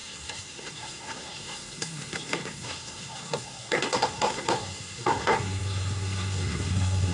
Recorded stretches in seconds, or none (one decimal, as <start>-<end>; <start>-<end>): none